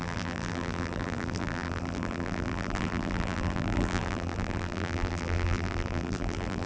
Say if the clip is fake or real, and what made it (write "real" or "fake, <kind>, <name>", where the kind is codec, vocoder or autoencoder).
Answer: fake, vocoder, BigVGAN v2